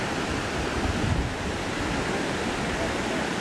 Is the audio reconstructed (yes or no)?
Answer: no